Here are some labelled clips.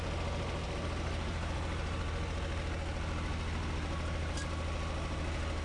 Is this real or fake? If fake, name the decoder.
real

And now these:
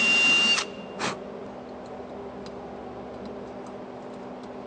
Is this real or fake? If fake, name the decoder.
real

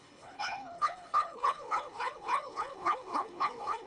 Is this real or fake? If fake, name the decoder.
fake, codec, HILCodec